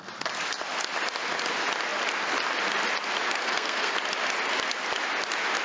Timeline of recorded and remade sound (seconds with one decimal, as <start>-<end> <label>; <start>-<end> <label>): 0.0-3.4 recorded; 3.4-3.9 remade; 3.9-5.6 recorded